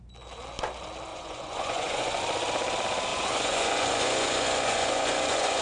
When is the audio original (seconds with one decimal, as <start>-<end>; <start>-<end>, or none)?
0.0-1.1; 2.2-3.1